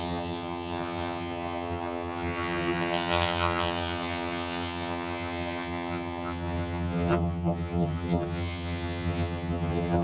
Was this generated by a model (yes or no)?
yes